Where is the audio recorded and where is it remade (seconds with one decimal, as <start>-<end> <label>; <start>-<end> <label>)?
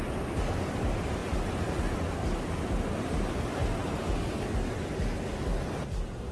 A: 0.0-0.7 recorded; 0.7-1.2 remade; 1.2-3.0 recorded; 3.0-3.6 remade; 3.6-6.3 recorded